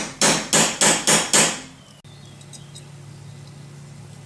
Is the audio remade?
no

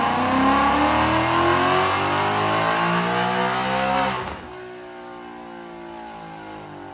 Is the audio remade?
no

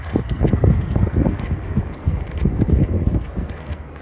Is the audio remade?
yes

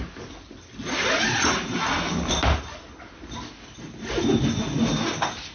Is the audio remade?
no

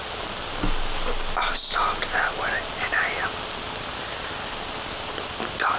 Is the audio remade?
no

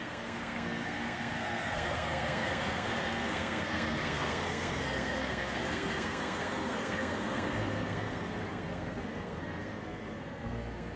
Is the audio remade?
yes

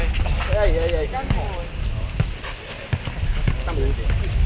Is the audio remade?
no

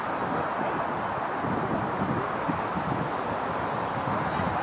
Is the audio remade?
no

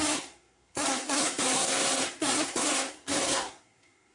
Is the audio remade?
yes